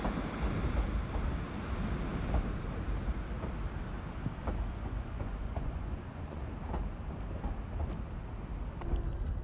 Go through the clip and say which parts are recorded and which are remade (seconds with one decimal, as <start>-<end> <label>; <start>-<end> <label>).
0.0-4.7 recorded; 4.7-6.4 remade; 6.4-9.4 recorded